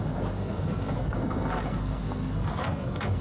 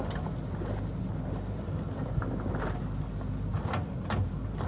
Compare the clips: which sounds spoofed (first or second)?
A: first